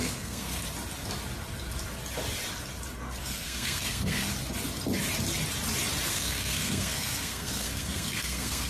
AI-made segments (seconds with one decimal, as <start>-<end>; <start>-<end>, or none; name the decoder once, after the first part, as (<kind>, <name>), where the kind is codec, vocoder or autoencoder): 0.0-0.6 (codec, SNAC); 3.2-4.3; 6.1-8.7